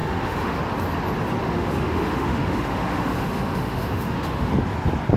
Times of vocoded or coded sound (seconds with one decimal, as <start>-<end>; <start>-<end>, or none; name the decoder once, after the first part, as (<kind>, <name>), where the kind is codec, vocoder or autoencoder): 0.0-0.6 (autoencoder, DAC-VAE); 1.4-4.5